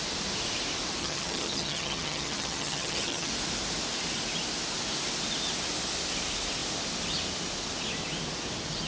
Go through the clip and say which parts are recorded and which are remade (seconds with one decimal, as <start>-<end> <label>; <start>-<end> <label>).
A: 0.0-1.0 recorded; 1.0-3.3 remade; 3.3-8.9 recorded